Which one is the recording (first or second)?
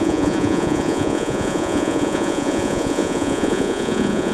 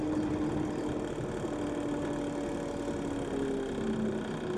second